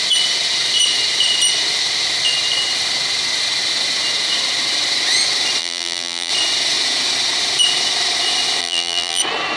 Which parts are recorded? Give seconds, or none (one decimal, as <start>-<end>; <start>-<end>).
0.0-5.6; 6.3-8.6; 9.2-9.6